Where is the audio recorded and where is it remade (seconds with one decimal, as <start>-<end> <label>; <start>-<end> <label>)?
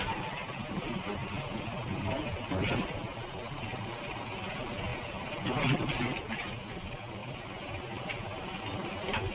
0.0-9.3 recorded